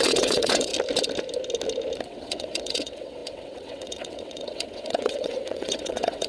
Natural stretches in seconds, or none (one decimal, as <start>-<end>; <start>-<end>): 0.7-2.0

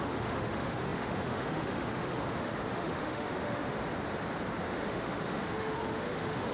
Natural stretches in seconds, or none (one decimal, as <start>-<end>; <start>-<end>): 3.8-4.6